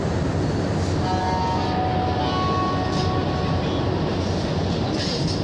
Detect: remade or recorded recorded